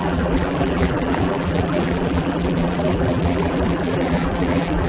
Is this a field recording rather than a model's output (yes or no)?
no